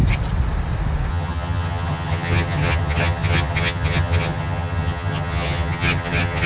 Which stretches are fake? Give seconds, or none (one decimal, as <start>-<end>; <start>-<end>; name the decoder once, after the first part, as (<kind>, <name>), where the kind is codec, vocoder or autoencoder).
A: 1.1-6.5 (vocoder, HiFi-GAN)